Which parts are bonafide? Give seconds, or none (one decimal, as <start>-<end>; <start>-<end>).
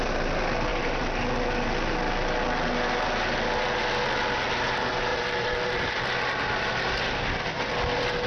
0.0-0.7; 1.2-5.1; 6.1-8.3